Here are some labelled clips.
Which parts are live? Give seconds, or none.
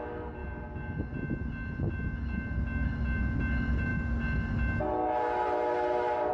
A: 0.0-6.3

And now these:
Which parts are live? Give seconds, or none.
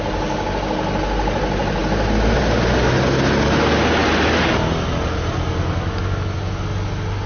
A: 0.0-7.3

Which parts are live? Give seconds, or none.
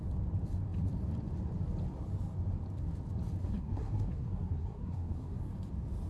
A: 0.0-3.4; 5.4-6.1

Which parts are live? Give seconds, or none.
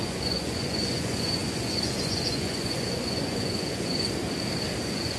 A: 4.2-4.8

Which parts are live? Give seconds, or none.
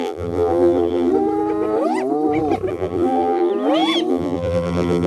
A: 1.1-2.7; 3.5-4.1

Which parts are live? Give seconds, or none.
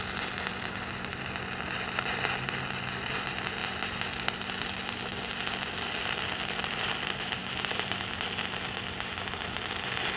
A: 0.0-10.2